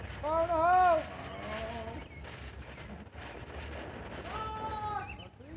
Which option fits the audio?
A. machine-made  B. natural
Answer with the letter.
B